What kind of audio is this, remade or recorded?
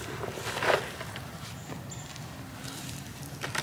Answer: recorded